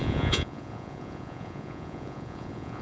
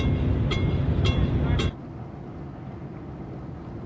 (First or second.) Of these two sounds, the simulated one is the first